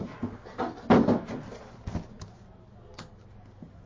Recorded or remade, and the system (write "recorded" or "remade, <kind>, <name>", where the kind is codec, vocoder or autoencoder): recorded